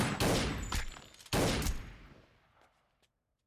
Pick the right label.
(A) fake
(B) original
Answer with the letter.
B